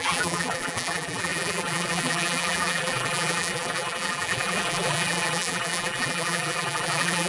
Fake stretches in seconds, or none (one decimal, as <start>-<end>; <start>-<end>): 0.0-7.3